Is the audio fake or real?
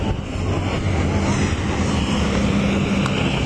real